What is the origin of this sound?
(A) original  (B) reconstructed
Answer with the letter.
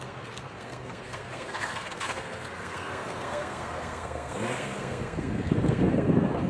B